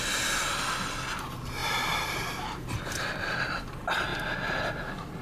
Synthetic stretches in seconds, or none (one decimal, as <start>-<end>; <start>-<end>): 1.6-3.5; 4.1-4.6